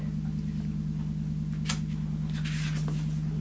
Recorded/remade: recorded